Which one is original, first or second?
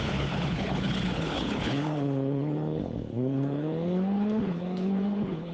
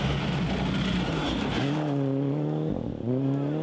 second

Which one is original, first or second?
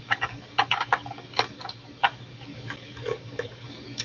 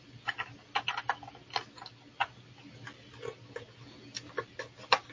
second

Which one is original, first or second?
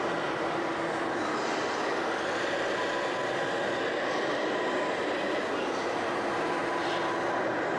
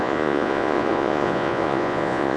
first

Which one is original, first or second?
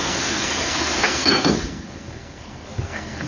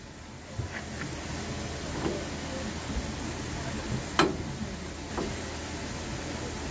second